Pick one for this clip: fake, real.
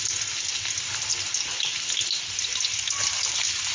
real